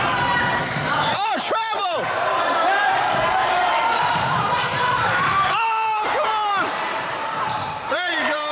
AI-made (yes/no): yes